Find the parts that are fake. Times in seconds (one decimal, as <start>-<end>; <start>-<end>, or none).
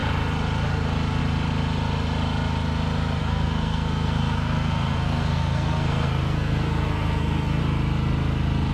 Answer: 3.2-7.6